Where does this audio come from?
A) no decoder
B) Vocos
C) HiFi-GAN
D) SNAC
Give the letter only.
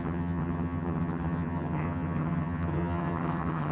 C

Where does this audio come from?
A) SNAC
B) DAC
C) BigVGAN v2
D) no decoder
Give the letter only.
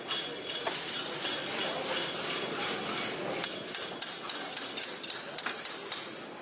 D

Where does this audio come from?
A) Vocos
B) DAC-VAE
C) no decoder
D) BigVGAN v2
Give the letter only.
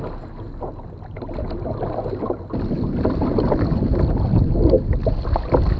C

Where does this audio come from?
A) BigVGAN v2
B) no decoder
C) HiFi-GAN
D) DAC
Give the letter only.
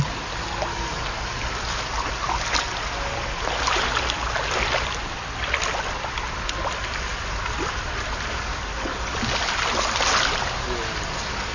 B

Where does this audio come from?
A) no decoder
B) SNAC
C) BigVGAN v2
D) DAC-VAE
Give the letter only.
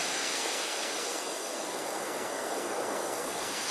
B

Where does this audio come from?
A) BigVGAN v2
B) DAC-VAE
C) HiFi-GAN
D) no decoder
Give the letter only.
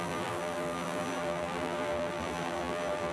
A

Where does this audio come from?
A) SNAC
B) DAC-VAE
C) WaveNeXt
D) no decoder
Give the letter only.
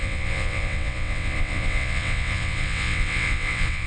C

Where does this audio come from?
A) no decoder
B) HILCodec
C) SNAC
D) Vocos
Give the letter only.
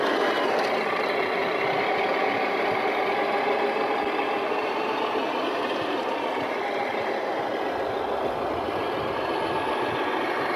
A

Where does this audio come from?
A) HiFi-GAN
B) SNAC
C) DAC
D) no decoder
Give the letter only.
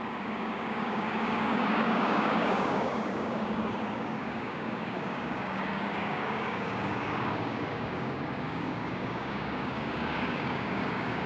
C